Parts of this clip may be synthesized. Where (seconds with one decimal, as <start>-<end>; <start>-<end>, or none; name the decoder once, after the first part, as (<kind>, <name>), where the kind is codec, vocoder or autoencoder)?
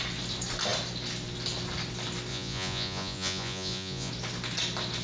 2.3-4.1 (vocoder, Vocos)